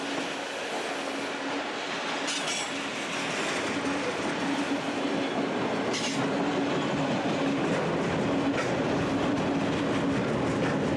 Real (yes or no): yes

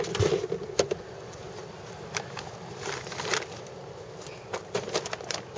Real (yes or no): yes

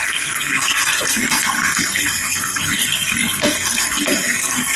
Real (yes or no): no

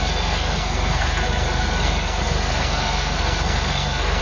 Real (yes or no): no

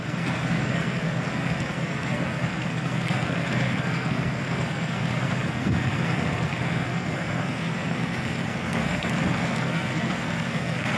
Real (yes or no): no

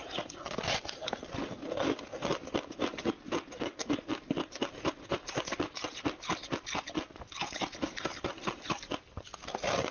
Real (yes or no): yes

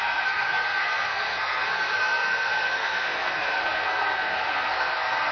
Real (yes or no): no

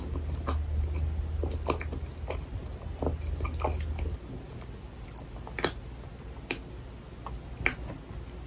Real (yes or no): yes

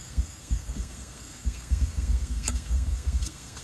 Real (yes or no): no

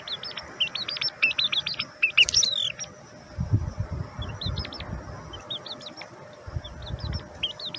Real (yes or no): yes